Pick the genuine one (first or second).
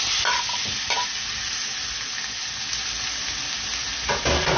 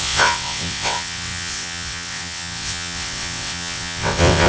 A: first